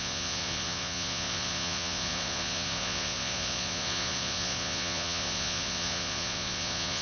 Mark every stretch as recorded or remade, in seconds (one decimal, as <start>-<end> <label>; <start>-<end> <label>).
0.0-7.0 remade